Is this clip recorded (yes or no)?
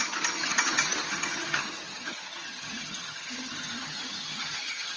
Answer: no